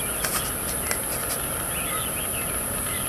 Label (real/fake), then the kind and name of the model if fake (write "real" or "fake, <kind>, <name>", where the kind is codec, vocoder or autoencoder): real